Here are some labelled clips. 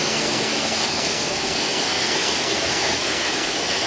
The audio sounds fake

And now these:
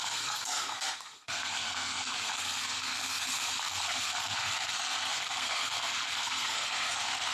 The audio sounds fake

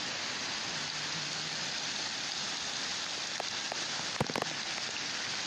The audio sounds real